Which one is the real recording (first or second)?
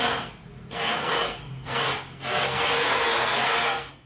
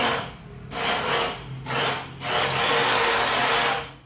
second